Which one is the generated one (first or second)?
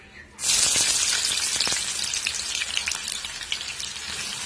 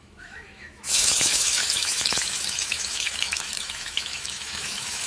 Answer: second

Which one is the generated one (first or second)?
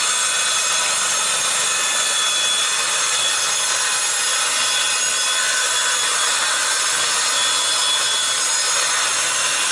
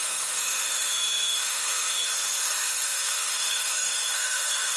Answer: second